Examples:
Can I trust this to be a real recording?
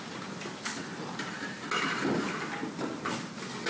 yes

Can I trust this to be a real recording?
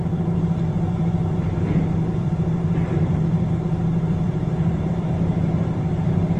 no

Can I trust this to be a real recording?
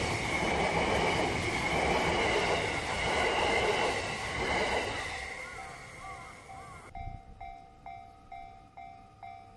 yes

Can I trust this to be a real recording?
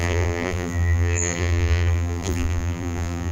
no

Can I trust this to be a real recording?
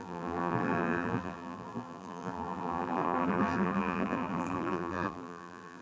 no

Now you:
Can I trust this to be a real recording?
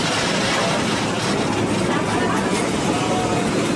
yes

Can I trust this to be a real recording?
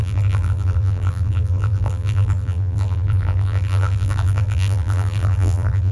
no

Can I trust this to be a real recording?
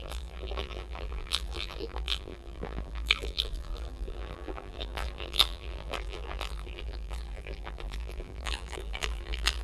no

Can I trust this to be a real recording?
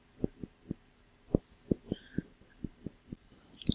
no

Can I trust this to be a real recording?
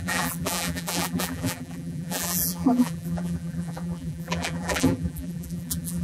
no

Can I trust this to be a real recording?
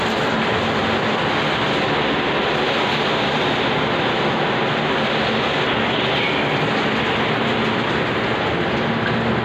yes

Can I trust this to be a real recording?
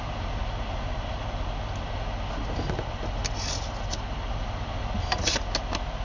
yes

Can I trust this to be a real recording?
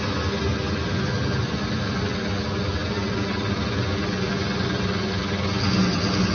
yes